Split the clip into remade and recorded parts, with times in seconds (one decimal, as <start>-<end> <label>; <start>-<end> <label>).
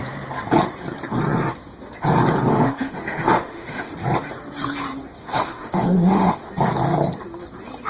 0.0-2.5 recorded; 2.5-3.9 remade; 3.9-5.2 recorded; 5.2-6.5 remade; 6.5-7.9 recorded